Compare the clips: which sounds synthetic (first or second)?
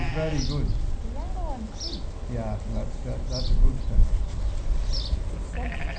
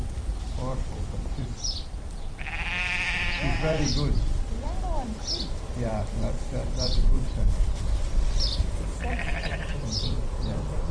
second